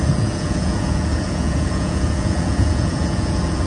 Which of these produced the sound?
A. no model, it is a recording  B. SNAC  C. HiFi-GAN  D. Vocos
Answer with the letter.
D